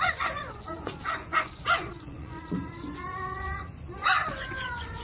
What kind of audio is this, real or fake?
fake